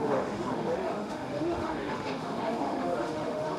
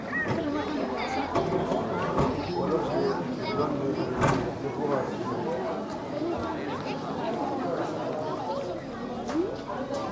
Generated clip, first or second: first